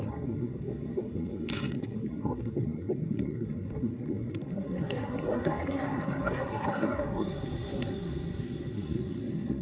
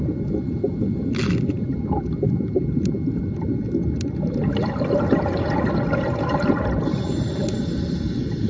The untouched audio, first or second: second